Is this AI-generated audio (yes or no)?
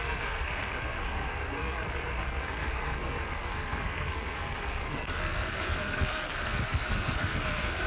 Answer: yes